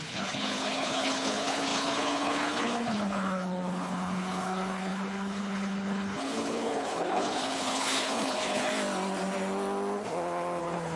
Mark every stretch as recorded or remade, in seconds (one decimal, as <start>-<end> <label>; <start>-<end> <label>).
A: 0.0-8.7 remade; 8.7-10.6 recorded; 10.6-11.0 remade